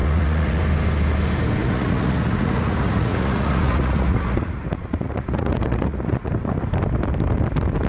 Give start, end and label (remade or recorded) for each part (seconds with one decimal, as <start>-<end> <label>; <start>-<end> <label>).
0.0-0.6 remade; 0.6-1.6 recorded; 1.6-6.3 remade; 6.3-7.9 recorded